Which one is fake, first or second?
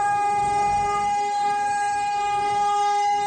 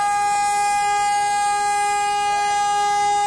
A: first